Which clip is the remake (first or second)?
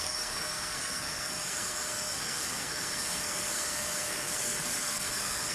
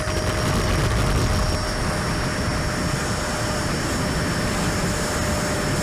first